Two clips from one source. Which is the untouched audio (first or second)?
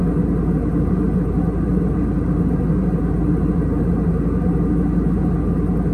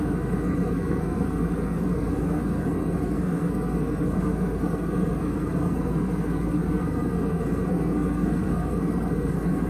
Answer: first